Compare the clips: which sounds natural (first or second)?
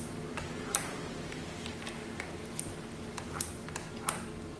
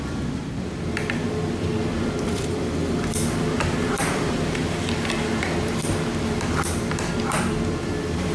first